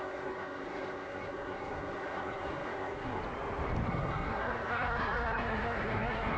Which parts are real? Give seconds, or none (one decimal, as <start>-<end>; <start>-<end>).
3.2-3.9